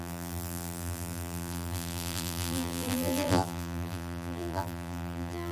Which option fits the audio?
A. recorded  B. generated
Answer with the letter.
B